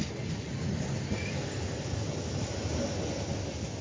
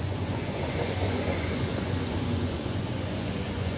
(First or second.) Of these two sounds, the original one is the first